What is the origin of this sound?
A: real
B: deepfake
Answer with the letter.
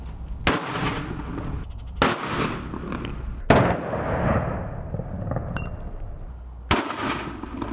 A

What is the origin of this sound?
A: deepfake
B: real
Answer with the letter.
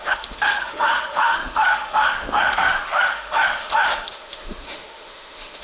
A